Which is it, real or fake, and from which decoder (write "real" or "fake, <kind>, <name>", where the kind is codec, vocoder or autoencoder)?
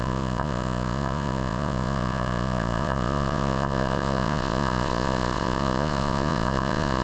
fake, vocoder, Vocos